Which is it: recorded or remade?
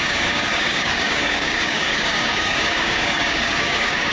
remade